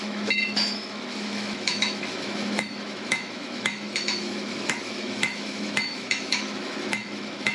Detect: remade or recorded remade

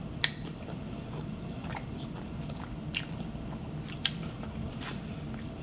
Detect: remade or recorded recorded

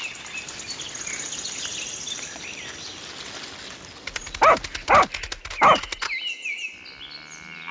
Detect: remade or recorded recorded